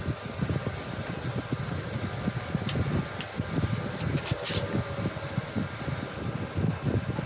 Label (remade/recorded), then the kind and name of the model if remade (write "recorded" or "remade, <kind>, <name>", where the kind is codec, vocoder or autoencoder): recorded